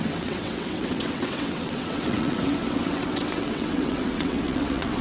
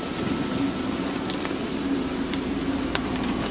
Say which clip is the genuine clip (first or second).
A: second